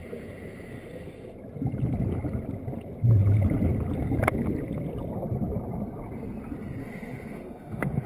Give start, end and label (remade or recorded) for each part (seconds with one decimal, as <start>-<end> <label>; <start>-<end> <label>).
0.0-6.8 recorded; 6.8-8.1 remade